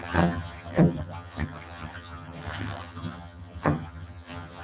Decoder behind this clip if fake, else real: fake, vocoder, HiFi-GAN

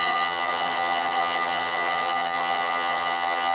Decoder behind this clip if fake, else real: fake, vocoder, HiFi-GAN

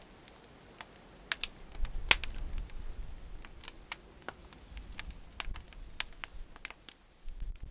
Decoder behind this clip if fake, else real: real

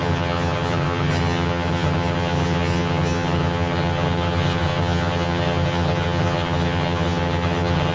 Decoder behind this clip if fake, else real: fake, vocoder, HiFi-GAN